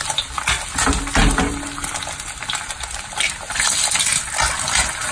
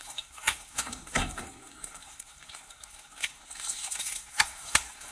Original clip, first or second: first